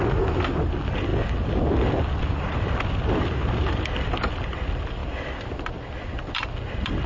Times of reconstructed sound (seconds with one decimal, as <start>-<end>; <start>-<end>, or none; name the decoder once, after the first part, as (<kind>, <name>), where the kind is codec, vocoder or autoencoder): none